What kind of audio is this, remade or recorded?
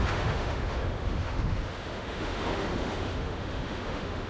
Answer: remade